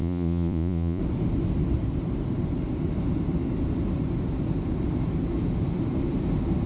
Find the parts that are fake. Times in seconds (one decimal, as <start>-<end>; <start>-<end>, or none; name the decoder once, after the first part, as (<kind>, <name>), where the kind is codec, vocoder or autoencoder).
0.0-1.0 (vocoder, Vocos)